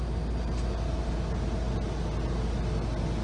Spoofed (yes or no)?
no